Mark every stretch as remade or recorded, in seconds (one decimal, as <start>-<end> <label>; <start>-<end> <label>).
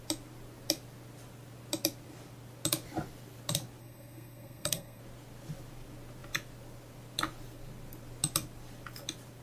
0.0-3.8 recorded; 3.8-5.0 remade; 5.0-9.4 recorded